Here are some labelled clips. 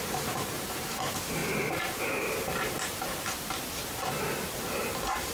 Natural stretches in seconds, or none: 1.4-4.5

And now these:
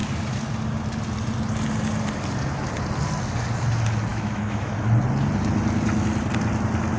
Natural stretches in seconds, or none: 0.0-4.1; 4.7-7.0

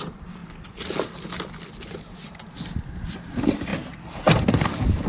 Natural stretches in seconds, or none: 3.7-5.1

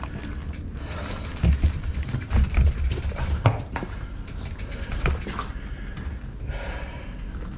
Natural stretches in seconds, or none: 0.0-0.7; 5.3-7.6

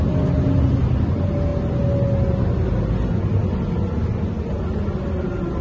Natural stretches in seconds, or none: 0.0-5.6

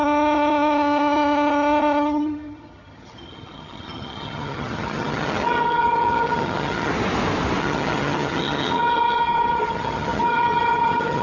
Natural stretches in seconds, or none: 6.9-7.6